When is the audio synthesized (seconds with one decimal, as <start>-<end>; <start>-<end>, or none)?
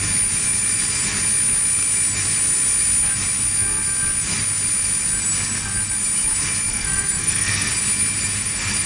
6.7-7.7